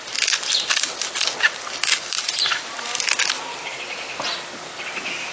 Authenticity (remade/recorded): recorded